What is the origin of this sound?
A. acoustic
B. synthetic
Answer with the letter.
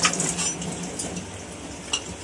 A